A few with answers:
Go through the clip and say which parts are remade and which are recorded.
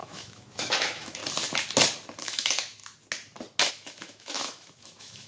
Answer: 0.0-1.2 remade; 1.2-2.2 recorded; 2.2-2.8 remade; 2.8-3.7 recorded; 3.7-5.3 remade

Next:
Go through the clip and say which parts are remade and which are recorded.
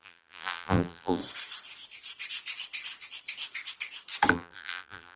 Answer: 0.0-1.2 remade; 1.2-4.3 recorded; 4.3-5.2 remade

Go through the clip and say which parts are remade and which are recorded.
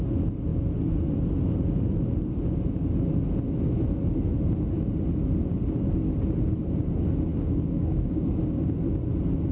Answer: 0.0-7.3 recorded; 7.3-8.6 remade; 8.6-9.5 recorded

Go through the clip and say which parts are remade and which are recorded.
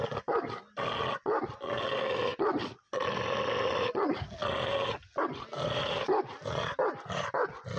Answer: 0.0-7.8 recorded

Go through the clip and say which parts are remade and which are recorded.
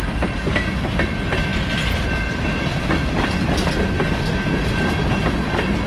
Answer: 0.0-5.9 recorded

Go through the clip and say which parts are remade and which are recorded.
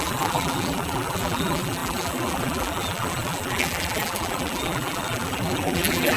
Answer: 0.0-6.2 remade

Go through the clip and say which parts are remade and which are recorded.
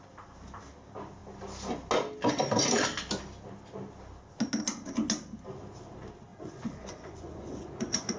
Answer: 0.0-6.3 recorded; 6.3-8.2 remade